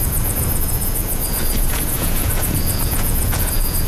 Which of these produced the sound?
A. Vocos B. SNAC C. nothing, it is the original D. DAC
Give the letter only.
A